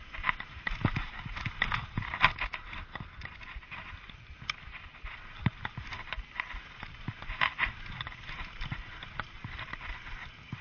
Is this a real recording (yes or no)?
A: yes